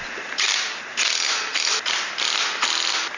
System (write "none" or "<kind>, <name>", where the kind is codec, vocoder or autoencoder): none